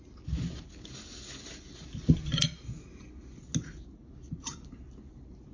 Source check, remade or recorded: recorded